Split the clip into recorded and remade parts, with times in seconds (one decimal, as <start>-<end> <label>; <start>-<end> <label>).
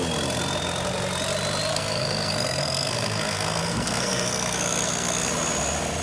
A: 0.0-1.7 recorded; 1.7-5.3 remade; 5.3-6.0 recorded